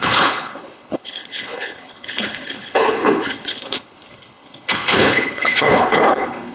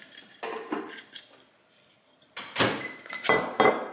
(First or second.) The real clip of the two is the second